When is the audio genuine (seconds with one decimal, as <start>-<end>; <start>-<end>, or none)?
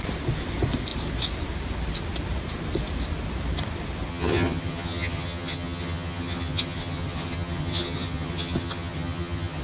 0.0-4.1